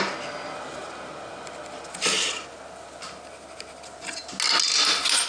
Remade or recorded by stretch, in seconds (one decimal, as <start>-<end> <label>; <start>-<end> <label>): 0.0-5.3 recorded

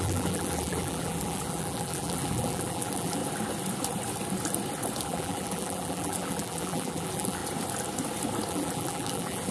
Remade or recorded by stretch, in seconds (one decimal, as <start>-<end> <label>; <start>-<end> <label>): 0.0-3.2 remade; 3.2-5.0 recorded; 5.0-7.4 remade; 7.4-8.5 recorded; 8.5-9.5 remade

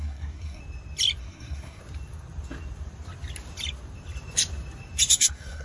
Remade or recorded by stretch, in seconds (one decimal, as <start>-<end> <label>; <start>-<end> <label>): 0.0-0.6 remade; 0.6-1.2 recorded; 1.2-1.8 remade; 1.8-5.1 recorded; 5.1-5.6 remade